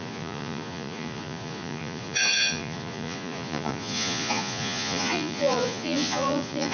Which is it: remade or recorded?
remade